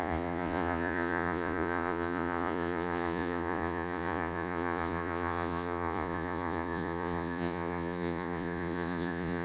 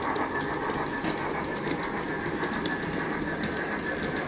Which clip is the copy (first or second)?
first